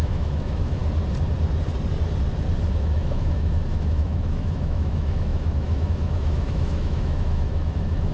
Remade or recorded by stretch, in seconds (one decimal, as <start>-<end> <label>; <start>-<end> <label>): 0.0-0.8 remade; 0.8-2.7 recorded; 2.7-8.1 remade